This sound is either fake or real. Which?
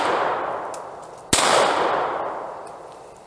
real